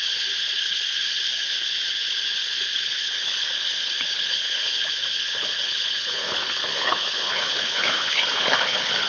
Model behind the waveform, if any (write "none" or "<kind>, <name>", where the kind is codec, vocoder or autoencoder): codec, HILCodec